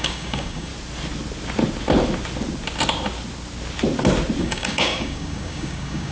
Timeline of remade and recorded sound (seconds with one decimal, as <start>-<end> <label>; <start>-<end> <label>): 0.0-0.7 remade; 0.7-4.4 recorded; 4.4-6.1 remade